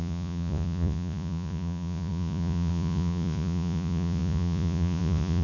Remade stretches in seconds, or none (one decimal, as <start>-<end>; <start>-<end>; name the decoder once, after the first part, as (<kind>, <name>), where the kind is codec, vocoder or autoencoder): 0.0-5.4 (vocoder, Vocos)

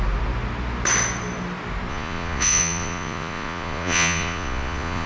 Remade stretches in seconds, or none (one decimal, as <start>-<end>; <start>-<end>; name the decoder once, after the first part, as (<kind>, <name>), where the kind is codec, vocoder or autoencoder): 1.9-5.1 (vocoder, Vocos)